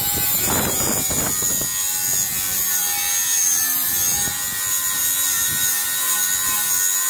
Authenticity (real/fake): real